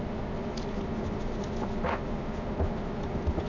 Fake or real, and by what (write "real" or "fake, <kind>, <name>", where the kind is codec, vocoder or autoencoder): real